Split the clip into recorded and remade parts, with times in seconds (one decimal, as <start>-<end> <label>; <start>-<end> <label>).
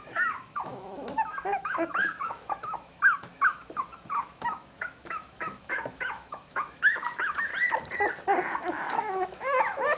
0.0-7.5 remade; 7.5-8.7 recorded; 8.7-10.0 remade